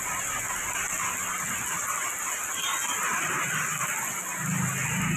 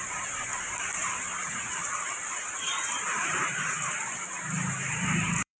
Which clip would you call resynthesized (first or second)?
second